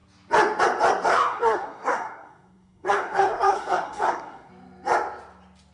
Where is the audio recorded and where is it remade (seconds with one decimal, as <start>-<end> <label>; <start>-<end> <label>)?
0.0-1.1 recorded; 1.1-4.5 remade; 4.5-5.7 recorded